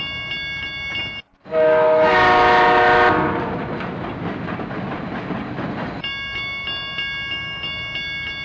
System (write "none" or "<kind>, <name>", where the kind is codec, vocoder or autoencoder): none